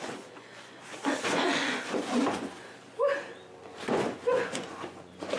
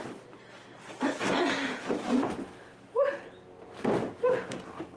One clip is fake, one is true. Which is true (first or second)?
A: second